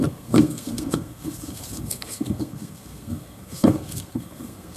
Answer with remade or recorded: remade